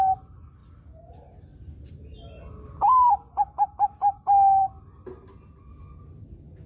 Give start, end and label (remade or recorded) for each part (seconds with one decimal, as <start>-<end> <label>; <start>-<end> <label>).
0.0-6.7 recorded